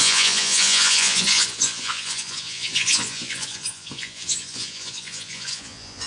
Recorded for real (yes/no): no